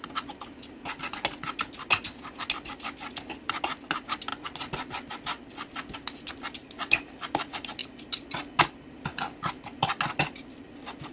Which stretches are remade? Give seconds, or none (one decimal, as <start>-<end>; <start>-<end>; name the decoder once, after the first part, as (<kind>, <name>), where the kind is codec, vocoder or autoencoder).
none